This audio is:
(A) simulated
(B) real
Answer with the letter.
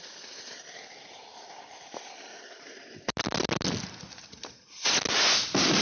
B